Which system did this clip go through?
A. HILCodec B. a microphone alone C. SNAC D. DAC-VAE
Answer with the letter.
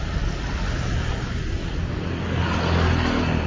B